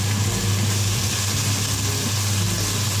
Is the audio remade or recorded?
recorded